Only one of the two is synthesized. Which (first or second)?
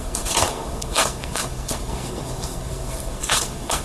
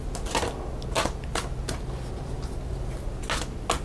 first